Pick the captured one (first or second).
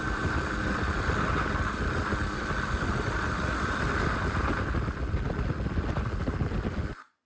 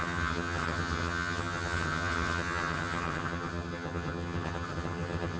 first